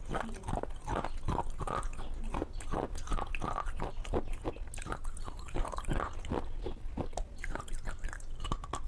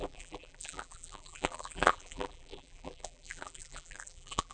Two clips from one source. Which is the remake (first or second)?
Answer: second